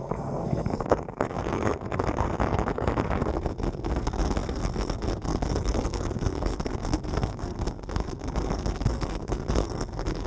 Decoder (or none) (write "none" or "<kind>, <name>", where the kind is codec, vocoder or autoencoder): codec, SNAC